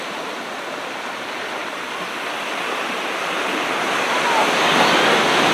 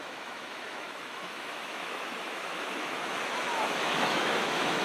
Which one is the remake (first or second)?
second